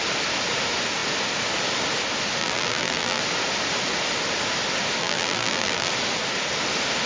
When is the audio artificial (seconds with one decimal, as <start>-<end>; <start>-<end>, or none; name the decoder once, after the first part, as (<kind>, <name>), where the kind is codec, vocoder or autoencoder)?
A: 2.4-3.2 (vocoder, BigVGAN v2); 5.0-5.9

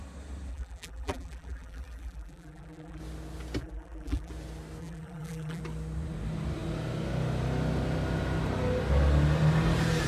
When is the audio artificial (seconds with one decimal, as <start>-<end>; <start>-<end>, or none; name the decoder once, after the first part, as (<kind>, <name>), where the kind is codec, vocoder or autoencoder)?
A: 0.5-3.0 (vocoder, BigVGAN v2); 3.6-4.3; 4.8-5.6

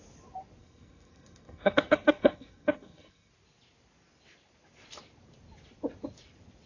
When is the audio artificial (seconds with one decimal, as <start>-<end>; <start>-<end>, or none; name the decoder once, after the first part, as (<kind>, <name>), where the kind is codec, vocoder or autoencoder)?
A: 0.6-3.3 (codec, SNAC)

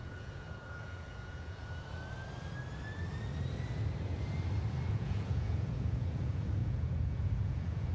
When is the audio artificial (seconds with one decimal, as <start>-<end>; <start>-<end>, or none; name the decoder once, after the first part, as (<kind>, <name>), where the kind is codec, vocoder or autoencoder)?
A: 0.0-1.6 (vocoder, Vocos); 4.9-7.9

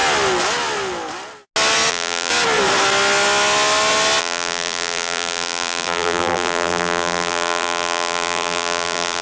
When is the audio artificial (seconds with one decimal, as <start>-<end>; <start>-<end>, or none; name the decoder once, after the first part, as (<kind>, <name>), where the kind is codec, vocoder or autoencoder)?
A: 1.9-2.3 (vocoder, BigVGAN v2); 4.2-9.2

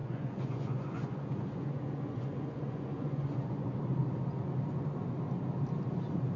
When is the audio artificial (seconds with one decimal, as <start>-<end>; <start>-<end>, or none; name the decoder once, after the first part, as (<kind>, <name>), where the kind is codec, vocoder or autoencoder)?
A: 0.0-3.8 (vocoder, Vocos)

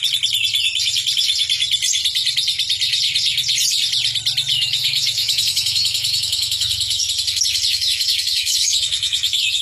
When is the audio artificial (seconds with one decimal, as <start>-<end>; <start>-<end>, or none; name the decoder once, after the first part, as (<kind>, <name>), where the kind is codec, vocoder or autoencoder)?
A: 4.5-7.0 (autoencoder, DAC-VAE); 7.7-9.6

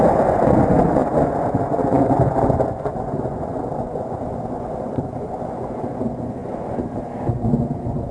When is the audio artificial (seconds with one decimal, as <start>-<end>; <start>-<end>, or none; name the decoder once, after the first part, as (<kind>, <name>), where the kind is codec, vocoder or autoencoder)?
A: 0.0-8.1 (vocoder, Vocos)